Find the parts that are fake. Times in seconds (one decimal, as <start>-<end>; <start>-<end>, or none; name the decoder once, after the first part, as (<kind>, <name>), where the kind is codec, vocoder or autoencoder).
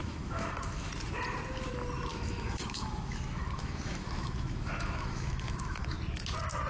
0.0-0.9 (autoencoder, DAC-VAE); 2.1-6.0